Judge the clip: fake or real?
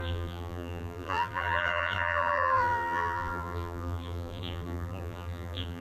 fake